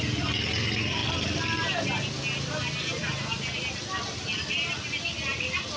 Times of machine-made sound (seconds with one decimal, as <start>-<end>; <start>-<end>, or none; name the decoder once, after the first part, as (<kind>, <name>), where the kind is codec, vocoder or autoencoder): none

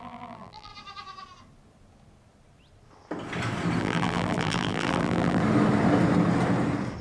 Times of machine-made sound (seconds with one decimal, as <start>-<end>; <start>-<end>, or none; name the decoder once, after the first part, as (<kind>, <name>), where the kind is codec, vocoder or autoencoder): 0.0-0.7 (vocoder, BigVGAN v2); 3.8-5.4

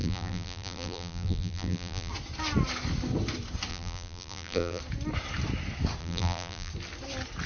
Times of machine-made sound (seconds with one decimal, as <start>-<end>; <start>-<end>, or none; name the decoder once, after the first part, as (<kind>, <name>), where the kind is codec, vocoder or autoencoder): 0.0-2.1 (vocoder, BigVGAN v2); 3.7-4.8; 6.0-6.7

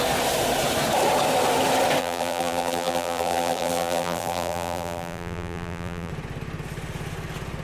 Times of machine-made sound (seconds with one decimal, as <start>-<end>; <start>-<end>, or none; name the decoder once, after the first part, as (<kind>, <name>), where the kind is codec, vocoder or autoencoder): 2.0-6.1 (vocoder, BigVGAN v2)

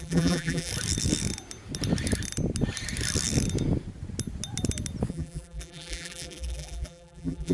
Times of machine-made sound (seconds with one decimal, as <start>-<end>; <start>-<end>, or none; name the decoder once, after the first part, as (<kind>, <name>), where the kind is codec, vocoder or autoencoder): 0.0-0.7 (vocoder, BigVGAN v2); 5.1-7.5

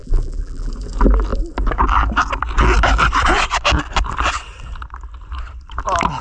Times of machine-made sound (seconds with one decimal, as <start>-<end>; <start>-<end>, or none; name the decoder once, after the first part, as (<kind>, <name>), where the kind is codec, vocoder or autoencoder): 0.0-0.7 (vocoder, BigVGAN v2)